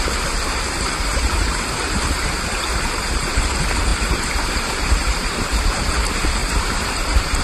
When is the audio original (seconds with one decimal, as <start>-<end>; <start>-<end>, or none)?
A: 0.0-1.0; 3.4-3.9; 5.9-6.4